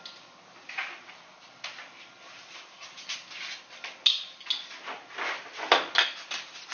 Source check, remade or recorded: recorded